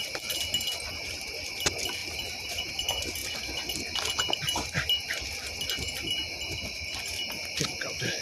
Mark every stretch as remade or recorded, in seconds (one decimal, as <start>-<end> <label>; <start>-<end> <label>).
0.0-2.0 recorded; 2.0-2.7 remade; 2.7-8.2 recorded